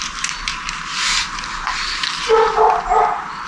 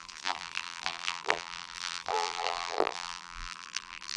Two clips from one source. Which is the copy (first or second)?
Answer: second